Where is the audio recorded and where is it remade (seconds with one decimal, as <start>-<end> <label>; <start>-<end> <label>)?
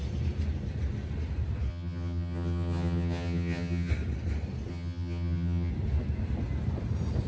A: 0.0-1.7 recorded; 1.7-3.9 remade; 3.9-4.7 recorded; 4.7-5.7 remade; 5.7-7.3 recorded